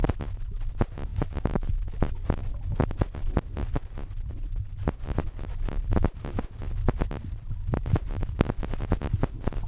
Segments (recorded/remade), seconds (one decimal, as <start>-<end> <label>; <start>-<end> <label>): 0.0-9.7 recorded